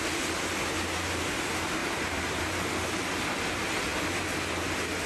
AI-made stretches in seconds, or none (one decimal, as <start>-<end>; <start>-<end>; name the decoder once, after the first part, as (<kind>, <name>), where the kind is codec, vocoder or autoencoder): 1.8-2.7 (vocoder, BigVGAN v2)